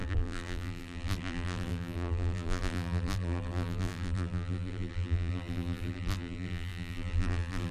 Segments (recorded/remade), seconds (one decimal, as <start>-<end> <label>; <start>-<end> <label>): 0.0-7.7 remade